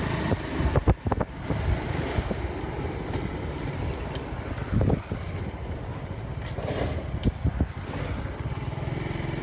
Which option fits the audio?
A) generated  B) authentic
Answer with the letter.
B